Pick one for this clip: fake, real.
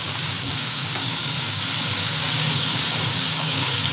fake